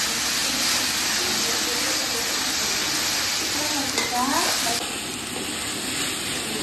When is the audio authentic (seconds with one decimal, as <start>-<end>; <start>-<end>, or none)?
0.0-6.6